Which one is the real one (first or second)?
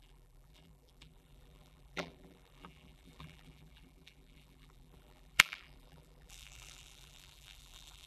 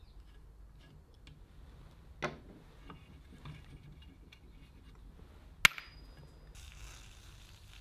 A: second